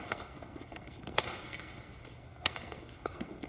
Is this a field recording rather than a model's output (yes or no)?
no